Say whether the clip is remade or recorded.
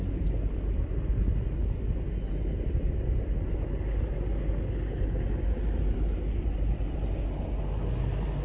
recorded